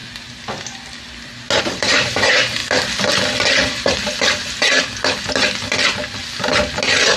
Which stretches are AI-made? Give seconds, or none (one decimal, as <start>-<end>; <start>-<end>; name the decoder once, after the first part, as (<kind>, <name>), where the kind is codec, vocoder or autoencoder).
1.6-2.6 (vocoder, BigVGAN v2)